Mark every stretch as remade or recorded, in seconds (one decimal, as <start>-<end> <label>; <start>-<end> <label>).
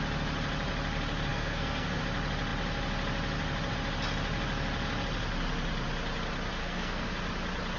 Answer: 0.0-1.3 recorded; 1.3-2.0 remade; 2.0-6.6 recorded; 6.6-7.1 remade; 7.1-7.8 recorded